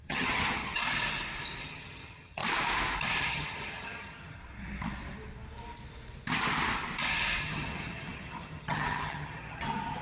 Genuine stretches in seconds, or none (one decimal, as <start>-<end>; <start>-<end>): 0.8-1.6; 2.4-3.2; 4.4-7.4